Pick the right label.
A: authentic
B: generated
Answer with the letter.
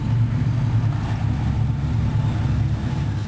A